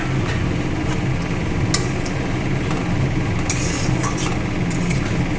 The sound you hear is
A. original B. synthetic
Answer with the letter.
A